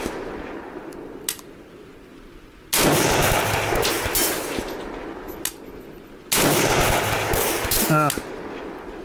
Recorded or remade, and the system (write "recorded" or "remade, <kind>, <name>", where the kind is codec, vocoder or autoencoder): recorded